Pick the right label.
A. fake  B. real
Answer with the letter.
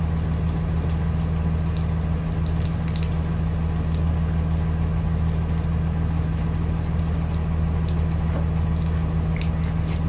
B